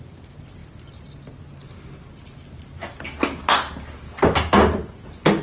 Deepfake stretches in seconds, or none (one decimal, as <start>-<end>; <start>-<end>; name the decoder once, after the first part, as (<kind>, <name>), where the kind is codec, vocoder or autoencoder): none